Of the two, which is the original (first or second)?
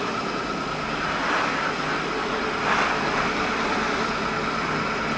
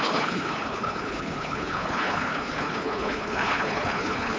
first